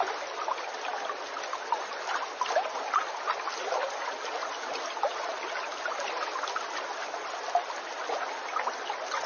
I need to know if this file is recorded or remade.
recorded